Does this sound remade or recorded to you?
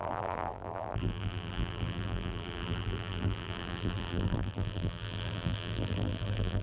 remade